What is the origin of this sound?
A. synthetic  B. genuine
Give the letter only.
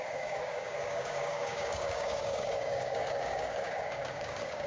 A